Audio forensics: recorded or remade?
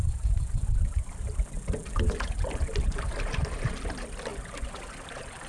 recorded